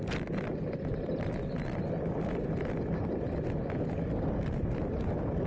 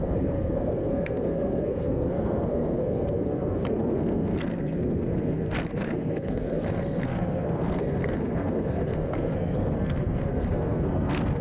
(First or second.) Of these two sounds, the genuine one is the first